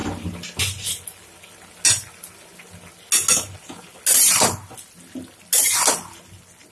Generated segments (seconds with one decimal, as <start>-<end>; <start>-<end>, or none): none